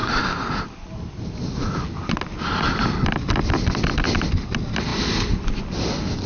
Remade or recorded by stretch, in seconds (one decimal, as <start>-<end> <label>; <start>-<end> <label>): 0.0-6.3 recorded